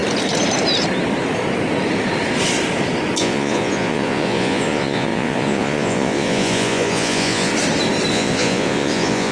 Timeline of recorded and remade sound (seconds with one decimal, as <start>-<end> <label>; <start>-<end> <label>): 0.0-3.2 recorded; 3.2-7.5 remade; 7.5-8.1 recorded; 8.1-9.3 remade